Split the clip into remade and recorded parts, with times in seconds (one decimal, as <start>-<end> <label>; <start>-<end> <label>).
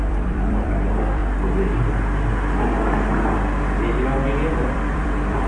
0.0-1.2 remade; 1.2-4.5 recorded; 4.5-5.5 remade